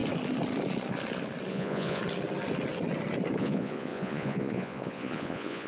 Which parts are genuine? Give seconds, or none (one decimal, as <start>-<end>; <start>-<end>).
0.0-1.5; 2.0-3.4